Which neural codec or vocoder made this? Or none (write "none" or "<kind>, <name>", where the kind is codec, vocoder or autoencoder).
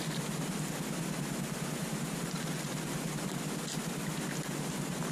none